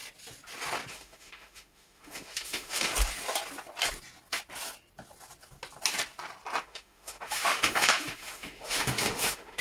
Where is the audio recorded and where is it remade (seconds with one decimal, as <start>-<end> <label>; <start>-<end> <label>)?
0.0-0.9 recorded; 0.9-2.9 remade; 2.9-6.6 recorded; 6.6-9.6 remade